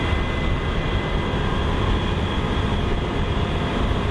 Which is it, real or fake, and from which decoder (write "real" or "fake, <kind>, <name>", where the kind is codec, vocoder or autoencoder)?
real